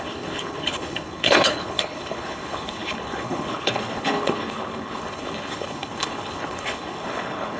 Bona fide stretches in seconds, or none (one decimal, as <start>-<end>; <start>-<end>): none